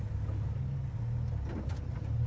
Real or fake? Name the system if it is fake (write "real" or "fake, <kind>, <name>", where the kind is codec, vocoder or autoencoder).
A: real